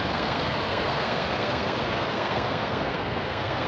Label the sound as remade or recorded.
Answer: remade